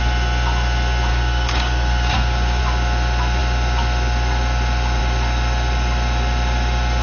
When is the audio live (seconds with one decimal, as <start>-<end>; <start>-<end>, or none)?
0.0-1.1; 2.6-7.0